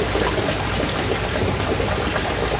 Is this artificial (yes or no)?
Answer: no